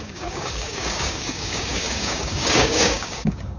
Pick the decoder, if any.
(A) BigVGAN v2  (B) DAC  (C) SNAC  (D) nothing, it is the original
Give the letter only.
B